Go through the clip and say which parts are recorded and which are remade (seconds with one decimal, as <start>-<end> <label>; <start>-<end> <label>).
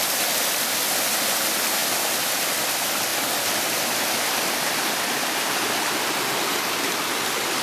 0.0-7.6 recorded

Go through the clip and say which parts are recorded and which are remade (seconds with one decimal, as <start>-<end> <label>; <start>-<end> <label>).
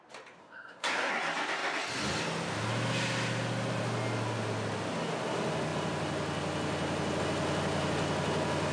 0.0-0.4 recorded; 0.4-1.1 remade; 1.1-8.7 recorded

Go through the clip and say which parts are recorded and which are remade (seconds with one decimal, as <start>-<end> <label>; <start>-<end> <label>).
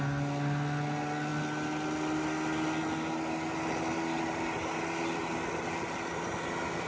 0.0-6.9 recorded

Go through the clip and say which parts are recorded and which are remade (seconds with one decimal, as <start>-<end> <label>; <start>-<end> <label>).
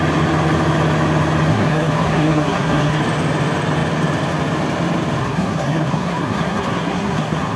0.0-1.5 recorded; 1.5-3.0 remade; 3.0-5.2 recorded; 5.2-7.6 remade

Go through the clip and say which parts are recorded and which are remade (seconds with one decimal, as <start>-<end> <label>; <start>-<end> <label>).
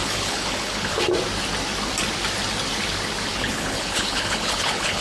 0.0-1.0 remade; 1.0-3.3 recorded; 3.3-5.0 remade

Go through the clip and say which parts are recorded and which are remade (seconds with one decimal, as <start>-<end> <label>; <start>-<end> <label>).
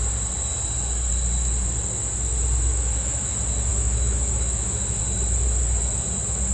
0.0-2.7 recorded; 2.7-3.3 remade; 3.3-3.7 recorded; 3.7-5.0 remade; 5.0-6.5 recorded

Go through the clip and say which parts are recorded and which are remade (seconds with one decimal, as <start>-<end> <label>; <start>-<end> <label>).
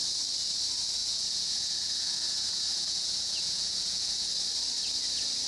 0.0-1.0 recorded; 1.0-4.3 remade; 4.3-5.5 recorded